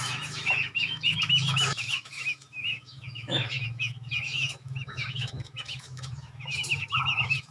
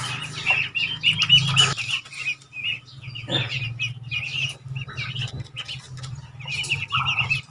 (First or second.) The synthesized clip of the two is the first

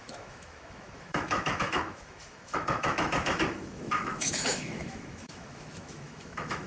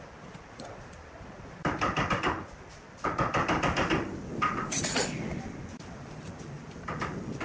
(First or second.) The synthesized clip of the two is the first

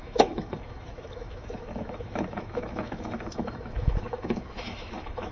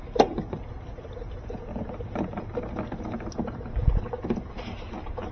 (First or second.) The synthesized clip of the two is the first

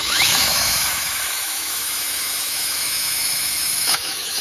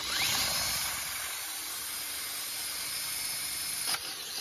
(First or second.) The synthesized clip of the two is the first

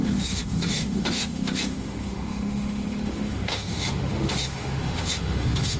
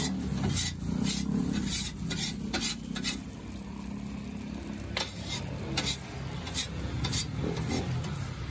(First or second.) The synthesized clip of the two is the first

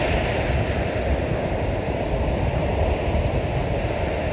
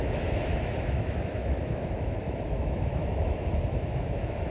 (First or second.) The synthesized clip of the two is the second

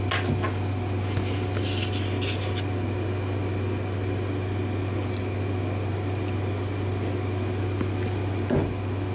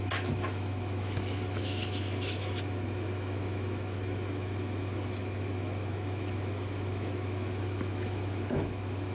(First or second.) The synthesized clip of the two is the second